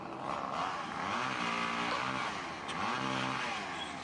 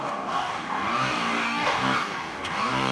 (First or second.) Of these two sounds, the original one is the first